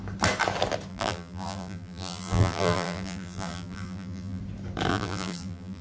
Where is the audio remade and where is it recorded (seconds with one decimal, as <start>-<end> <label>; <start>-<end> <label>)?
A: 0.0-0.9 recorded; 0.9-4.4 remade; 4.4-4.9 recorded; 4.9-5.8 remade